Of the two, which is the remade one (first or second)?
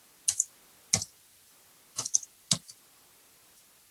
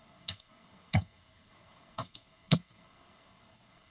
second